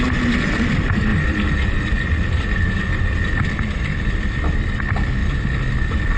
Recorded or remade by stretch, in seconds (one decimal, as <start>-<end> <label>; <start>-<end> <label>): 0.0-1.1 recorded; 1.1-4.8 remade; 4.8-5.2 recorded; 5.2-6.2 remade